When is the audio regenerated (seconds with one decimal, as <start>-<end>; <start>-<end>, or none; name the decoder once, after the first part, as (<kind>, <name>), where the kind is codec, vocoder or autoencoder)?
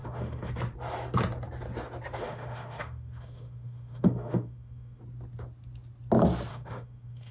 0.0-0.5 (autoencoder, DAC-VAE); 2.2-5.0; 6.5-7.3